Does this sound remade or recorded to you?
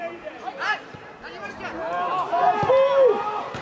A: recorded